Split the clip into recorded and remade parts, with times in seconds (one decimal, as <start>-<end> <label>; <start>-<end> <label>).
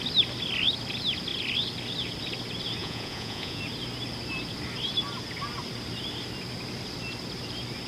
0.0-2.8 recorded; 2.8-3.6 remade; 3.6-7.9 recorded